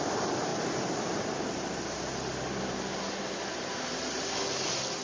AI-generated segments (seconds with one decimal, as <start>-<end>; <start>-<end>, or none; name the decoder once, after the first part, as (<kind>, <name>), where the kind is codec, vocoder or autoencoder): none